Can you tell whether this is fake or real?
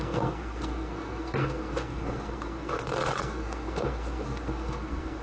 fake